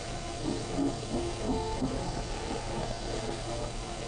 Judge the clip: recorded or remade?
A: remade